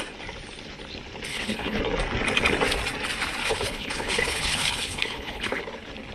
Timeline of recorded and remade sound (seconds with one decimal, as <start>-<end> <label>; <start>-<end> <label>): 0.0-1.3 recorded; 1.3-1.8 remade; 1.8-3.4 recorded; 3.4-5.6 remade; 5.6-6.1 recorded

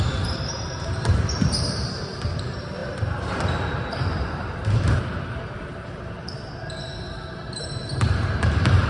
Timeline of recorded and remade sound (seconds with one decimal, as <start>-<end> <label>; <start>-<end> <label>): 0.0-8.9 remade

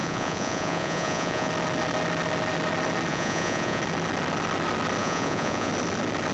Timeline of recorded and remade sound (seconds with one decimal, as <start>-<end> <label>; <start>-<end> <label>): 0.0-1.5 remade; 1.5-3.1 recorded; 3.1-3.8 remade; 3.8-5.0 recorded; 5.0-5.7 remade; 5.7-6.3 recorded

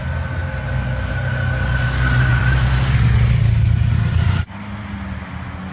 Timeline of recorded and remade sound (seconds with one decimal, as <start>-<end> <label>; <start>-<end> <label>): 0.0-5.7 recorded

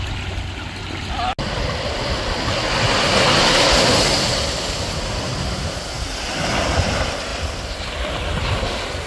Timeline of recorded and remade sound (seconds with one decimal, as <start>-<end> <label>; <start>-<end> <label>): 0.0-9.1 recorded

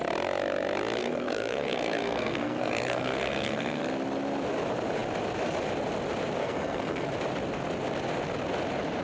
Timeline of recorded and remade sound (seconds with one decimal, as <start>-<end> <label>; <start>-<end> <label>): 0.0-1.0 recorded; 1.0-3.8 remade; 3.8-6.4 recorded; 6.4-7.1 remade; 7.1-9.0 recorded